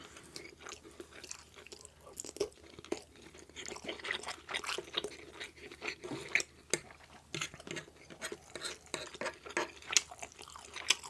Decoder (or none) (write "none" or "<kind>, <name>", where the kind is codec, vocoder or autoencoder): none